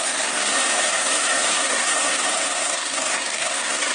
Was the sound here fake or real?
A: fake